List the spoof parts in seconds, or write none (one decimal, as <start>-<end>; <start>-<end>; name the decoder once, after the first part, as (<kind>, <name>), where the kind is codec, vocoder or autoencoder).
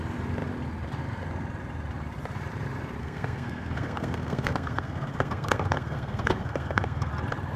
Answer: 3.0-7.1 (codec, SNAC)